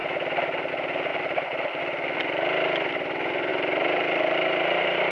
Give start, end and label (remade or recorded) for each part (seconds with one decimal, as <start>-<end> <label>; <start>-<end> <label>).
0.0-1.1 recorded; 1.1-1.8 remade; 1.8-3.5 recorded; 3.5-5.1 remade